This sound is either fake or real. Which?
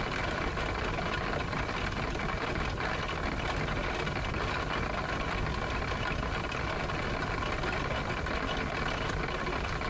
real